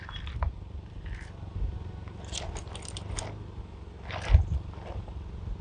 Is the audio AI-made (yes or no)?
no